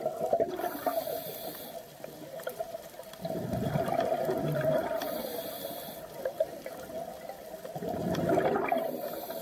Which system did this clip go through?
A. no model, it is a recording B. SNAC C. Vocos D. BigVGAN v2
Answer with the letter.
D